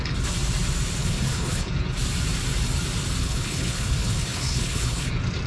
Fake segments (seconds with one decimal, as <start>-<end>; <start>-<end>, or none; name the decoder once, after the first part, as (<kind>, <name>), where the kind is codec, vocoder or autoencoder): 1.0-1.7 (codec, HILCodec); 3.2-5.1